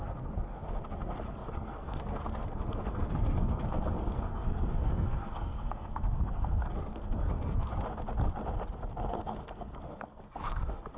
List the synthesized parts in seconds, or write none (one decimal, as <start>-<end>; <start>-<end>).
0.0-7.7; 9.1-11.0